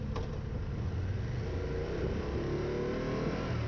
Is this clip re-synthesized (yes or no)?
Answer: no